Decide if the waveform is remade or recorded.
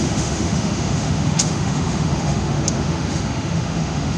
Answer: remade